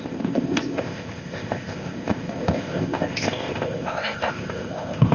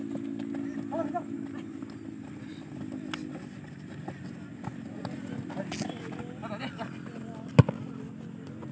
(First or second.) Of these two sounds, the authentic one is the second